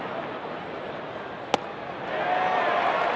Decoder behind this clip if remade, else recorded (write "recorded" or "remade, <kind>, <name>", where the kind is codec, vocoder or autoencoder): recorded